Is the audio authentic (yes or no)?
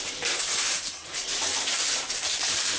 no